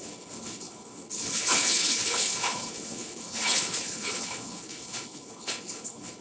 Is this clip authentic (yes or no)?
no